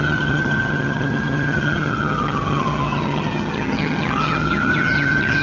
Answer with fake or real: fake